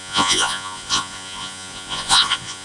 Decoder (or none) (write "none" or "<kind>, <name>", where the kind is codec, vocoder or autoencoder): vocoder, Vocos